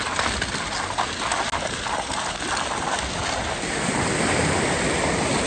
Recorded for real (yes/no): yes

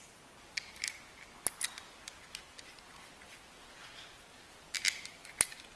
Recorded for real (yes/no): yes